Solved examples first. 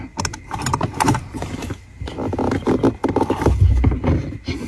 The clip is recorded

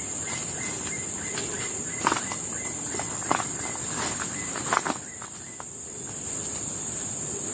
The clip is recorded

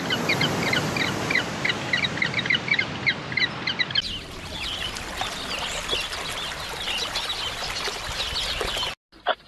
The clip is recorded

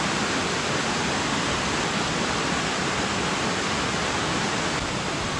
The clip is recorded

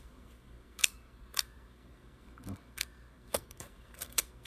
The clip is remade